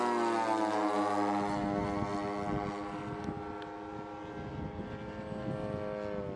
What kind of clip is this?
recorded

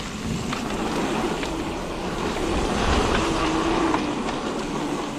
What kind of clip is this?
recorded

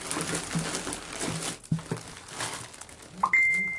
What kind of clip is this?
recorded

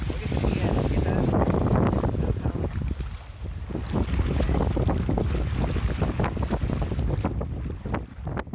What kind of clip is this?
recorded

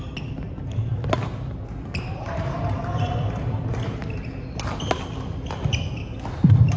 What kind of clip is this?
recorded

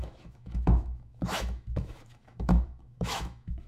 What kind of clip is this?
remade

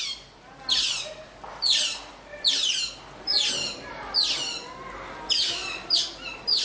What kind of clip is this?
recorded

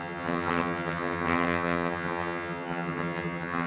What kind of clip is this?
remade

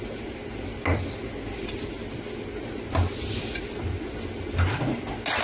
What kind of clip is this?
recorded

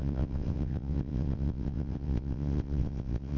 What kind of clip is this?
remade